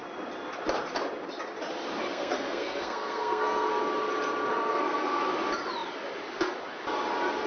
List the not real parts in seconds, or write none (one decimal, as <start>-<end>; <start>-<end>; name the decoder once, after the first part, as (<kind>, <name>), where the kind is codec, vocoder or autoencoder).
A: 2.1-3.7 (codec, SNAC); 4.5-5.2